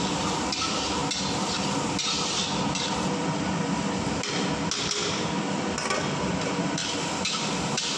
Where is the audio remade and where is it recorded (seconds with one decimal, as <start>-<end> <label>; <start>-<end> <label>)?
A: 0.0-1.0 remade; 1.0-5.5 recorded; 5.5-6.8 remade; 6.8-7.6 recorded; 7.6-8.0 remade